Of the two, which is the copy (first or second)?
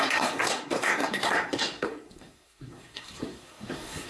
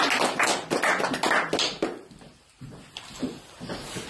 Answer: first